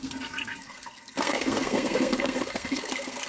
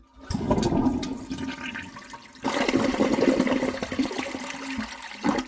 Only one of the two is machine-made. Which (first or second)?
first